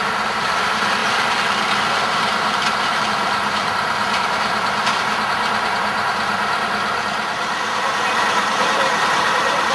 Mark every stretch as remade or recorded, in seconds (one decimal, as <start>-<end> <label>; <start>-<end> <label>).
0.0-1.0 remade; 1.0-2.0 recorded; 2.0-9.7 remade

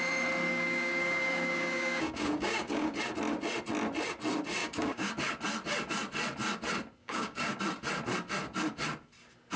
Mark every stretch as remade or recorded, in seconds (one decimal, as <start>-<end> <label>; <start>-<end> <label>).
0.0-0.5 recorded; 0.5-3.0 remade; 3.0-4.6 recorded; 4.6-5.1 remade; 5.1-7.0 recorded; 7.0-7.6 remade; 7.6-9.6 recorded